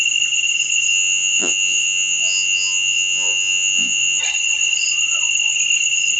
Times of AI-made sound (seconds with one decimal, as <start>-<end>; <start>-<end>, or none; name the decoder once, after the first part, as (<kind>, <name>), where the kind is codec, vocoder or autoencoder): 0.9-4.2 (vocoder, Vocos)